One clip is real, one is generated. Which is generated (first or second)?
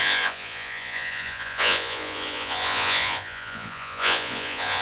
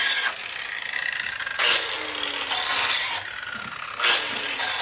first